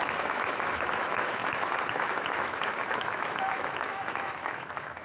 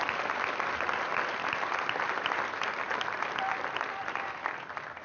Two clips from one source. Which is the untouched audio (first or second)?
second